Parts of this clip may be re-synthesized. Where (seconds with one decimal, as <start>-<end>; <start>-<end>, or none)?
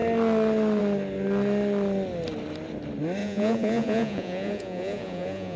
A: 3.2-5.6